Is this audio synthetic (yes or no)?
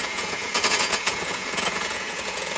yes